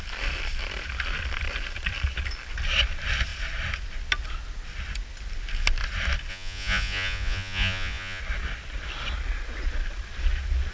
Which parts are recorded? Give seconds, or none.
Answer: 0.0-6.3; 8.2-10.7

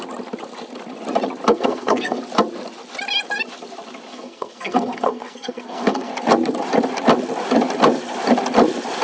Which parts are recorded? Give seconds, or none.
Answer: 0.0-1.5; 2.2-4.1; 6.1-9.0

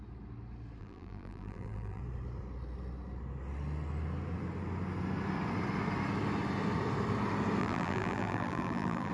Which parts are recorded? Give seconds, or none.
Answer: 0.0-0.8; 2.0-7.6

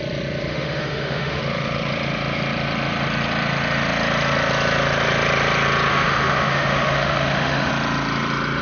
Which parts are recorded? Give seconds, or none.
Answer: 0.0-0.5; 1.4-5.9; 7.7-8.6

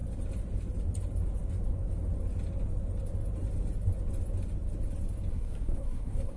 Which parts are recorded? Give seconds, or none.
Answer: 0.0-5.3